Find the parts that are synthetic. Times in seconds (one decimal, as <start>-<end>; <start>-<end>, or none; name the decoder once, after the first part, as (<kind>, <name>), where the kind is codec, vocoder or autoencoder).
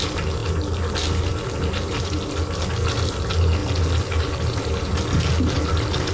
none